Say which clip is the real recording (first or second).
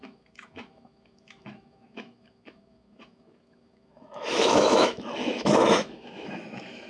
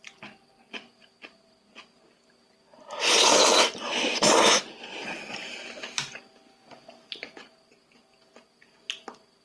second